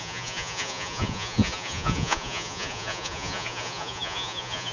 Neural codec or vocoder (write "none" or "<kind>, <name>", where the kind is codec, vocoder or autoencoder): vocoder, Vocos